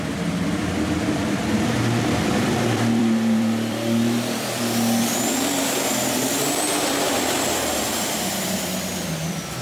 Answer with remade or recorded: remade